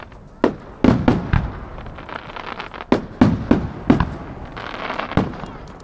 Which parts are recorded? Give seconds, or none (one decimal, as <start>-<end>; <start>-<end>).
0.0-5.8